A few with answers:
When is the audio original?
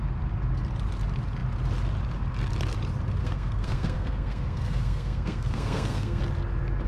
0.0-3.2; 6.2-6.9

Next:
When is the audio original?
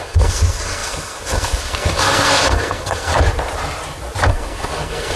3.1-4.3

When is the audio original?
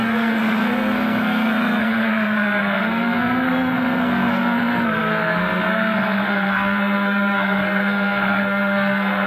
none